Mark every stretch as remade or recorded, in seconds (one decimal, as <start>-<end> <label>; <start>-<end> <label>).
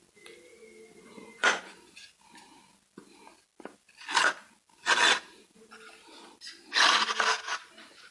0.0-1.1 recorded; 1.1-2.1 remade; 2.1-8.1 recorded